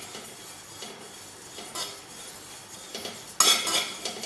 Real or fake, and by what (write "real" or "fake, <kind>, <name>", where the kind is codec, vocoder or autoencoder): real